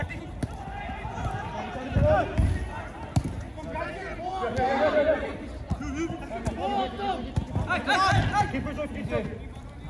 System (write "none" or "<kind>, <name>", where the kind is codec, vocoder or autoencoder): none